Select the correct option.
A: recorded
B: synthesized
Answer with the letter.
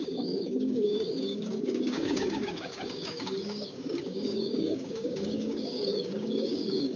B